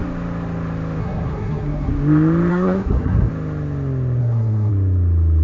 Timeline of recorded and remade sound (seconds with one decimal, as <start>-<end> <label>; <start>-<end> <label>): 0.0-1.0 recorded; 1.0-1.9 remade; 1.9-2.5 recorded; 2.5-3.3 remade; 3.3-4.2 recorded; 4.2-4.7 remade; 4.7-5.4 recorded